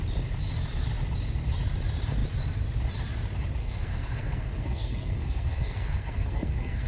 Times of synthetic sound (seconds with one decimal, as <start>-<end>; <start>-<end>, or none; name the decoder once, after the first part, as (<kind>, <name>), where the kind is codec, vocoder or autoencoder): 3.6-6.9 (codec, SNAC)